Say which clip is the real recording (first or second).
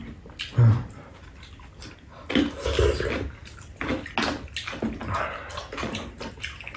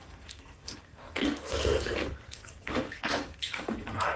first